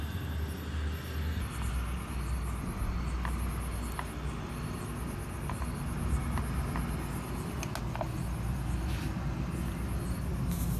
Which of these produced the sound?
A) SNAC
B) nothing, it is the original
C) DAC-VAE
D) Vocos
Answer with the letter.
B